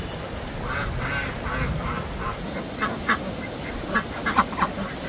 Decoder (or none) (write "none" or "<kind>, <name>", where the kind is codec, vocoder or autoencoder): none